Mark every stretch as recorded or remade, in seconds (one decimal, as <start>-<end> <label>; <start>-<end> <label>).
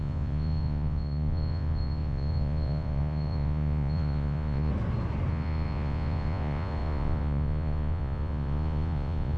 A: 0.0-4.7 remade; 4.7-5.3 recorded; 5.3-9.4 remade